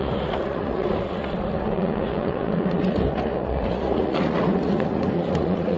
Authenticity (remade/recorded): remade